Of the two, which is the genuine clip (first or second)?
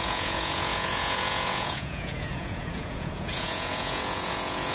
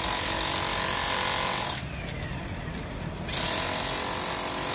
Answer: second